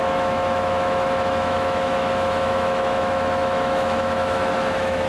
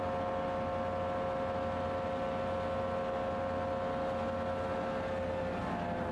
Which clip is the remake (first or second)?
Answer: first